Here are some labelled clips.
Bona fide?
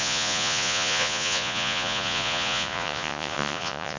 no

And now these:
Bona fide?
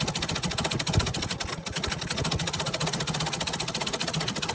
yes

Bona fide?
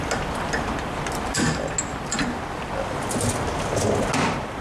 yes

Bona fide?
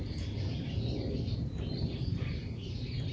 yes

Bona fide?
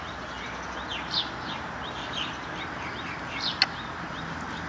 yes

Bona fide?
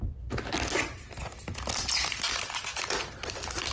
yes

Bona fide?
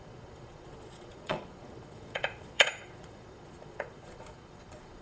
no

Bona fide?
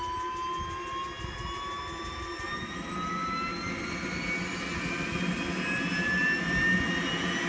yes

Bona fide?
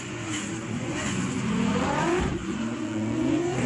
no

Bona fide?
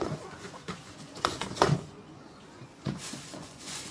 no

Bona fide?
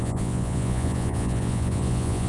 no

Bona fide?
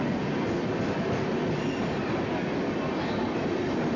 yes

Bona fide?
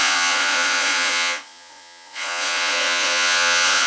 no